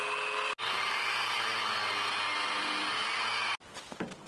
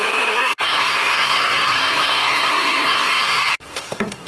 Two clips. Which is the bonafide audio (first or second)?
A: first